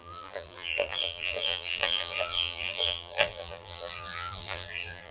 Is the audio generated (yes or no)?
yes